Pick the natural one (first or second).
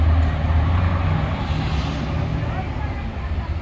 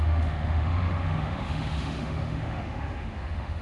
first